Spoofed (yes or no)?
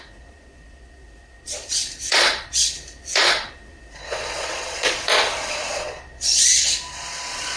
yes